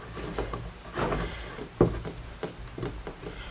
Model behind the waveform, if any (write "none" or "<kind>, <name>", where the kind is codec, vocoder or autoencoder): none